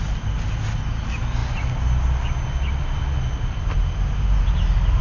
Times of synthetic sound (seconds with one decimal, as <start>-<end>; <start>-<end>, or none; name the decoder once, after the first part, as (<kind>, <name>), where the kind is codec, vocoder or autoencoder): none